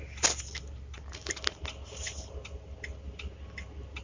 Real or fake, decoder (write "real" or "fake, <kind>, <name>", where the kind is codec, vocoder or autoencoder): real